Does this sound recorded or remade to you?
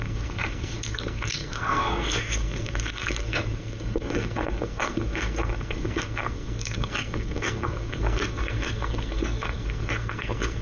remade